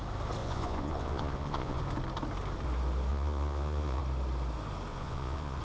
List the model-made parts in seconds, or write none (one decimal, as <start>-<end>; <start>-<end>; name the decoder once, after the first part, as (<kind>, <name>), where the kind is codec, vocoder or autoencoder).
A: 0.4-1.8 (vocoder, Vocos); 3.1-4.0; 4.9-5.6